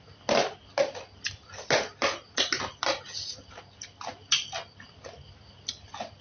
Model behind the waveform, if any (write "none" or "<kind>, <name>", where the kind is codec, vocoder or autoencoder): none